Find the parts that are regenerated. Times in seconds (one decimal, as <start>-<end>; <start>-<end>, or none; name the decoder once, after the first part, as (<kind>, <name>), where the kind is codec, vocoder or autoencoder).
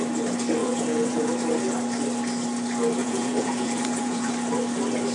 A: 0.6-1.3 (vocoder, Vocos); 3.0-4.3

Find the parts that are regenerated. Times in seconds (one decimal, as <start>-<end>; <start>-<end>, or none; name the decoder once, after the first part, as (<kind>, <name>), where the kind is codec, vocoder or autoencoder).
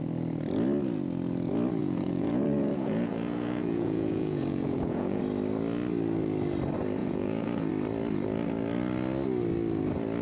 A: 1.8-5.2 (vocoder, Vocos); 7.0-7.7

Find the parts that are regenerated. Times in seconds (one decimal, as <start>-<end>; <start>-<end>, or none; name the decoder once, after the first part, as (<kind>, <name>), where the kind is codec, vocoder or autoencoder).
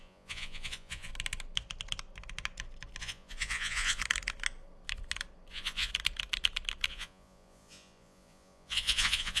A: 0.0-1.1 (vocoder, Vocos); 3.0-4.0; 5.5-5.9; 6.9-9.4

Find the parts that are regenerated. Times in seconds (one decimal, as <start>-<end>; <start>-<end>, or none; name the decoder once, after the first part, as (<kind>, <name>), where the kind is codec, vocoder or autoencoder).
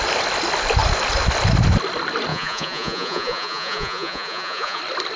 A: 2.3-4.8 (vocoder, Vocos)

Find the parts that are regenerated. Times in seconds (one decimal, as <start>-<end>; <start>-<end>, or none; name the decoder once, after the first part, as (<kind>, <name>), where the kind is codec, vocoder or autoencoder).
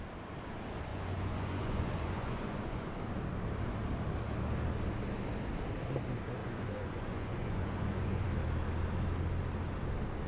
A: 0.9-2.9 (vocoder, Vocos); 6.4-8.3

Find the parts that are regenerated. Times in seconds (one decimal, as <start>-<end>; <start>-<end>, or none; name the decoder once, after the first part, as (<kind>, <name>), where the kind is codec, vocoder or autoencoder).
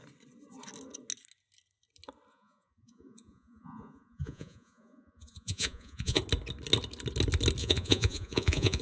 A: 2.3-6.2 (vocoder, Vocos); 7.6-8.8